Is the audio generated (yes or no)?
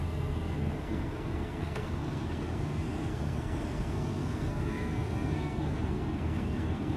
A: yes